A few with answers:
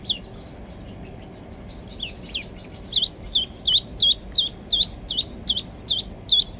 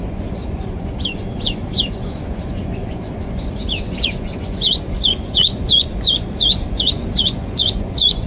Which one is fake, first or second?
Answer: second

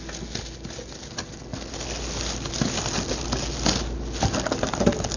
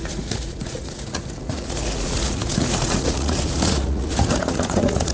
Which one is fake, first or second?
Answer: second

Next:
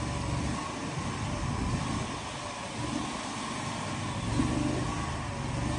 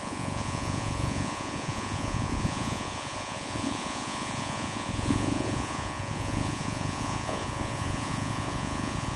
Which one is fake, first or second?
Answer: second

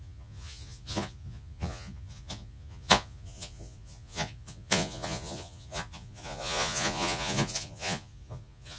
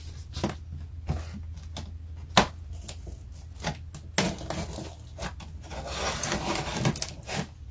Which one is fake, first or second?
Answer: first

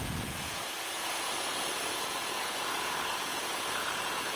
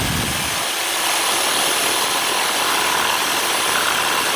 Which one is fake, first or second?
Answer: first